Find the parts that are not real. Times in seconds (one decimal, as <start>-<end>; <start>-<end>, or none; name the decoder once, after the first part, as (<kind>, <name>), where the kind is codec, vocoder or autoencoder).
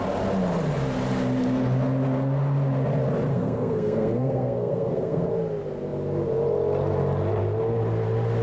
3.3-5.3 (codec, SNAC)